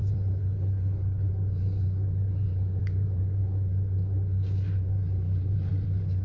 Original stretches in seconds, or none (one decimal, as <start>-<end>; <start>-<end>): 0.0-0.4; 1.3-6.2